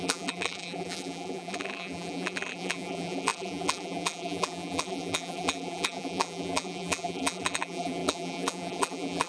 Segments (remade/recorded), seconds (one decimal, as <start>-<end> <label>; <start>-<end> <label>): 0.0-9.3 remade